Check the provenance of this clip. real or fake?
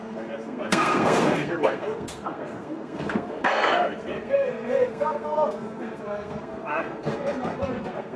fake